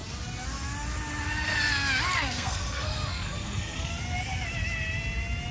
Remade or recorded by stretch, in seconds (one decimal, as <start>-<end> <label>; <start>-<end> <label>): 0.0-2.1 recorded; 2.1-3.9 remade; 3.9-5.5 recorded